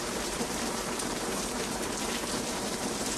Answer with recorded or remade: remade